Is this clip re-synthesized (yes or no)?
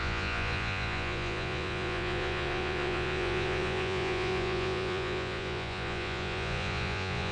yes